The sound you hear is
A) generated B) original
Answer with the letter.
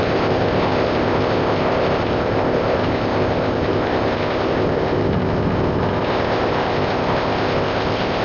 A